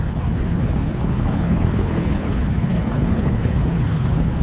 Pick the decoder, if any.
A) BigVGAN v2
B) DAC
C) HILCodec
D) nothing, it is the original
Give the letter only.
C